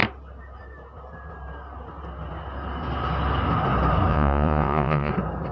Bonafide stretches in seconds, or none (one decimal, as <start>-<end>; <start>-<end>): 0.0-4.1; 5.1-5.5